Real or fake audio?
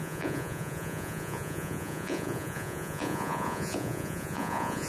fake